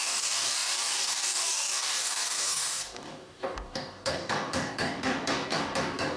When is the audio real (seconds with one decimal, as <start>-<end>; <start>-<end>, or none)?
none